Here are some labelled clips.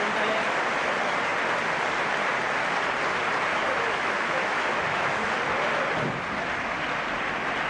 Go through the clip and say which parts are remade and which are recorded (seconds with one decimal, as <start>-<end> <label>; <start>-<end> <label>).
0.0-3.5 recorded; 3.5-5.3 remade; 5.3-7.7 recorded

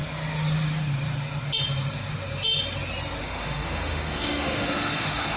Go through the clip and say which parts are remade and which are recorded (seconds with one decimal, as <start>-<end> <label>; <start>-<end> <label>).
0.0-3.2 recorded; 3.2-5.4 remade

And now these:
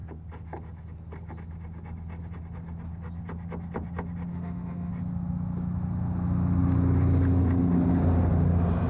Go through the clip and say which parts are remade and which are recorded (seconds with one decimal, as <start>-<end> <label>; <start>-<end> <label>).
0.0-4.3 recorded; 4.3-4.9 remade; 4.9-8.9 recorded

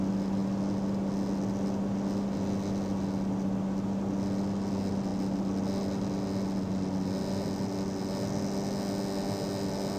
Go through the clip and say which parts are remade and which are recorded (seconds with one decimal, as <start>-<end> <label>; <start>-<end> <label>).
0.0-10.0 recorded

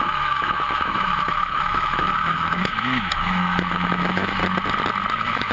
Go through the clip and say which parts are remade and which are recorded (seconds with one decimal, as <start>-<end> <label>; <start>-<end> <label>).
0.0-4.4 remade; 4.4-5.1 recorded; 5.1-5.5 remade

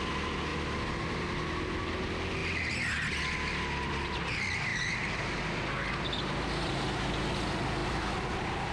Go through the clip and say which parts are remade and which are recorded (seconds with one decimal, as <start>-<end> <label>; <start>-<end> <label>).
0.0-8.7 recorded

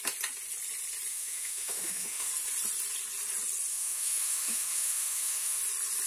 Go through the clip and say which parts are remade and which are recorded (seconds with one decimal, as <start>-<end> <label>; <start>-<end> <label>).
0.0-1.1 recorded; 1.1-2.3 remade; 2.3-3.7 recorded; 3.7-5.6 remade; 5.6-6.1 recorded